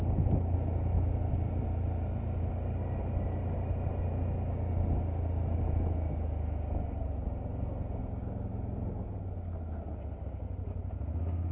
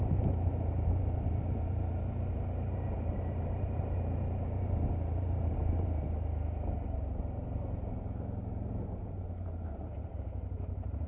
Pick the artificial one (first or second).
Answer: second